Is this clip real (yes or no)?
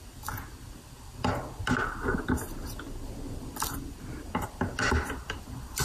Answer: yes